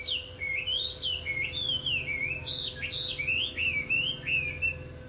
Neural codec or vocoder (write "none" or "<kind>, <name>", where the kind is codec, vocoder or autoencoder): none